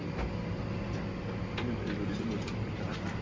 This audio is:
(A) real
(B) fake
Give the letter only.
A